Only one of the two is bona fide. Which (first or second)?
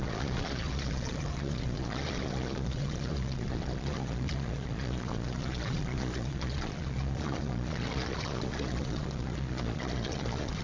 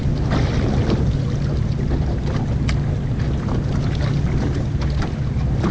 second